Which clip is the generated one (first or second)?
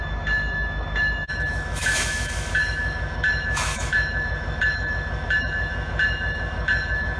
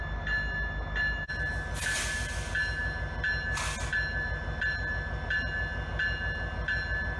first